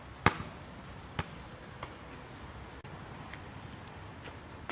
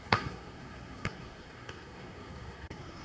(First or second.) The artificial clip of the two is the second